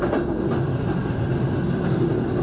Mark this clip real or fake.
real